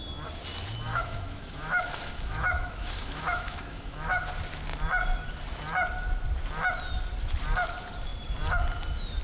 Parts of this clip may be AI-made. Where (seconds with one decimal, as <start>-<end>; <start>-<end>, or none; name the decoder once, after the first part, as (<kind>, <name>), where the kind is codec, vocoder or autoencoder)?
0.9-4.3 (autoencoder, DAC-VAE)